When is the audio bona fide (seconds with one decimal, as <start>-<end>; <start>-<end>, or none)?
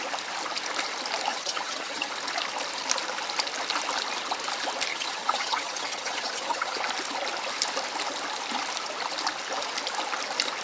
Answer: 0.0-1.3; 2.1-4.9; 6.8-10.6